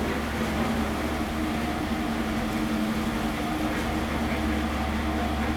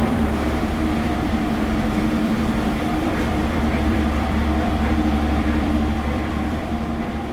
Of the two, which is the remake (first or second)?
second